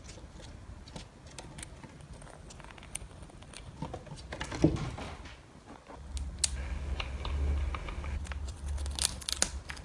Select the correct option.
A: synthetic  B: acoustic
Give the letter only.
B